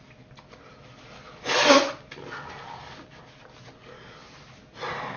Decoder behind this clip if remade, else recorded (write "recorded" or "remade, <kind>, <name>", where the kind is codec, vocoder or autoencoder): recorded